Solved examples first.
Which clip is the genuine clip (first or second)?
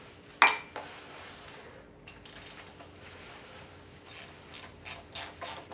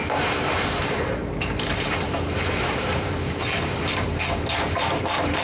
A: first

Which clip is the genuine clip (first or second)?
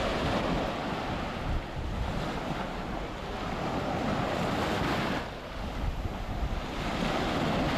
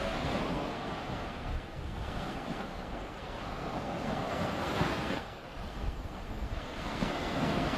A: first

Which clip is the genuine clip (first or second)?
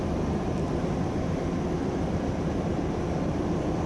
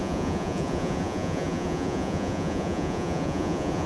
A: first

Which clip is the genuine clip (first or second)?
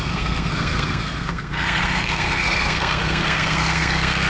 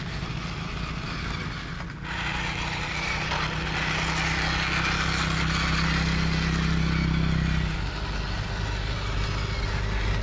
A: second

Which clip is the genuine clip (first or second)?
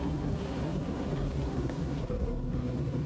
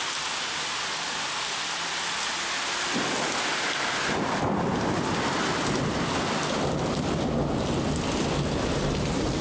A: second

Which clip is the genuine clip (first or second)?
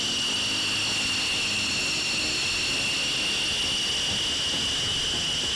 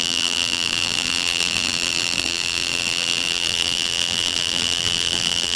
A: first